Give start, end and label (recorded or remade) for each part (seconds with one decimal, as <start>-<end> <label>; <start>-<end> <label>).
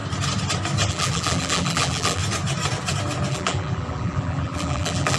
0.0-0.9 recorded; 0.9-2.2 remade; 2.2-3.3 recorded; 3.3-5.2 remade